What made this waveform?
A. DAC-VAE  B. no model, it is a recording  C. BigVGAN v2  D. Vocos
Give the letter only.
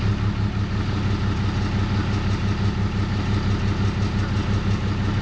B